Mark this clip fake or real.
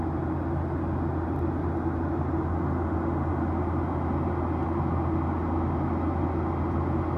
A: real